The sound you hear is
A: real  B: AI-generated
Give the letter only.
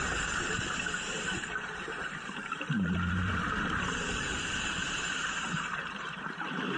B